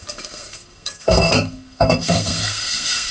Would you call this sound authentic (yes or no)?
no